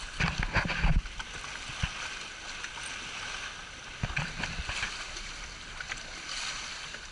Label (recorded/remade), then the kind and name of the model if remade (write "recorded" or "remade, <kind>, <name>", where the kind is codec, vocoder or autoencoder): recorded